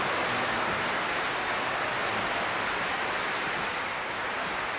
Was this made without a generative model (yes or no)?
yes